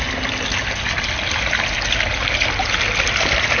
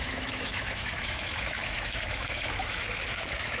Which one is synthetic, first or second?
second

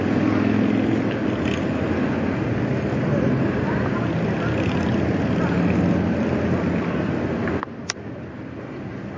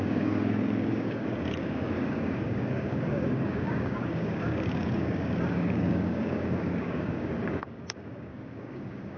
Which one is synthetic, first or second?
second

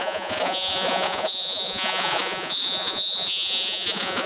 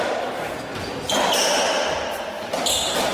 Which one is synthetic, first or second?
first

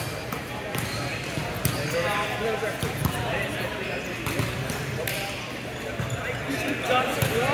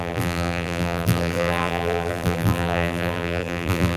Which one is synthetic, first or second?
second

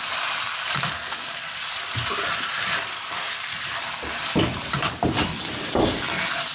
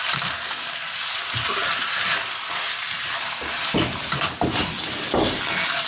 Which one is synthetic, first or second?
first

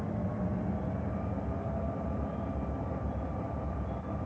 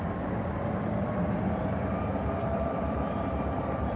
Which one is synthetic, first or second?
second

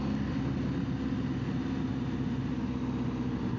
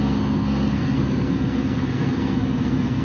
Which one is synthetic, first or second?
second